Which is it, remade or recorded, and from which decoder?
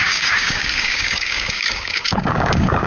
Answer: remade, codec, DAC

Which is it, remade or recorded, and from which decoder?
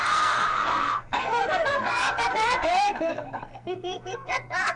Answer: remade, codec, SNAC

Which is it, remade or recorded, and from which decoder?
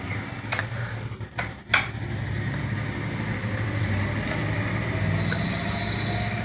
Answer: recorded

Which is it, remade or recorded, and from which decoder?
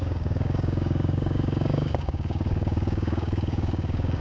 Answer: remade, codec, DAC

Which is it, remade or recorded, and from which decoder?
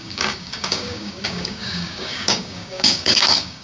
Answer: remade, codec, DAC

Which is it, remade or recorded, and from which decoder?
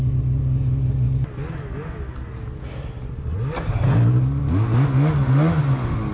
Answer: recorded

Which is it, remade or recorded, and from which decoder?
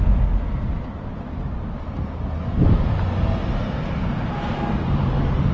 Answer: recorded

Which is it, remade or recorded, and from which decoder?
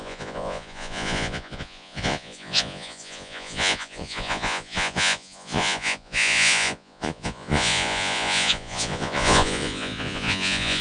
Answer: remade, vocoder, Vocos